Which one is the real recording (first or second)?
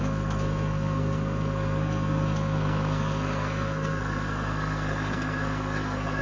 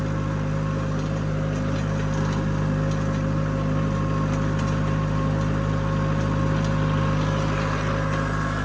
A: second